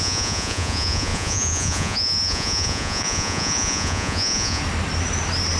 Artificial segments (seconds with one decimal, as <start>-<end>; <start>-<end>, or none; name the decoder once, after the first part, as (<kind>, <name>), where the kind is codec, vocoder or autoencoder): 0.0-4.6 (vocoder, Vocos)